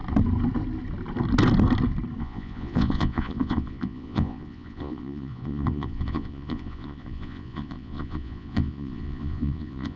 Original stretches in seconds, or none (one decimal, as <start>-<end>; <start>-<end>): 0.0-2.2